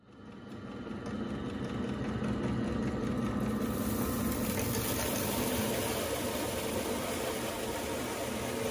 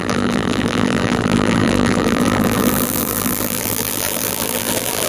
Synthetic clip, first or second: second